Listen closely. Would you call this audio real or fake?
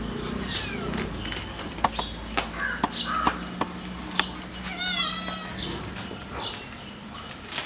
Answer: real